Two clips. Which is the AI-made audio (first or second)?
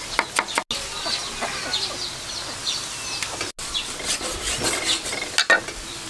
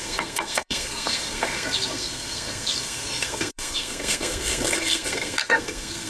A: second